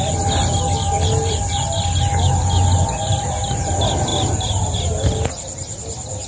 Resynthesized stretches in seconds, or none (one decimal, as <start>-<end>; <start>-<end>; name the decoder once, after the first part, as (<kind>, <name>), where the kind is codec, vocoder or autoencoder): none